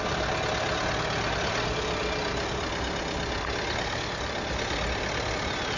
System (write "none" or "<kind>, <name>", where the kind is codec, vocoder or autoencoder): none